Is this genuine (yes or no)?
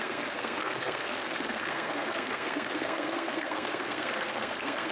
no